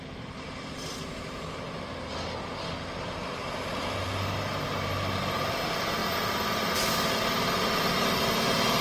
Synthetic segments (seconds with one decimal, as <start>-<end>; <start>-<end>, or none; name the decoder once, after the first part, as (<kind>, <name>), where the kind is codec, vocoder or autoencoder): none